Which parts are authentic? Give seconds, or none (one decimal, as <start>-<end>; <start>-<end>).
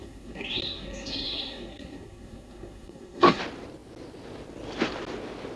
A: 3.4-5.6